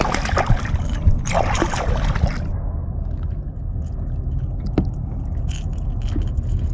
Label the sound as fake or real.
real